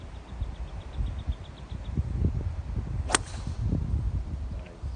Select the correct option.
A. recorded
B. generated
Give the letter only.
A